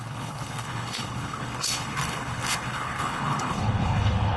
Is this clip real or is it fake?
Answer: fake